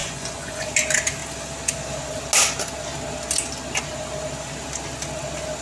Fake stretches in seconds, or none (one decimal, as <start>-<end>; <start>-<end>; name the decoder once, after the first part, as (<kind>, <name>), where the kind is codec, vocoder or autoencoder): 0.0-0.7 (vocoder, Vocos)